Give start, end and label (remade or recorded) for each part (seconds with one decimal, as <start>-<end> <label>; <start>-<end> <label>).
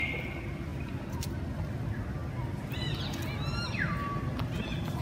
0.0-5.0 recorded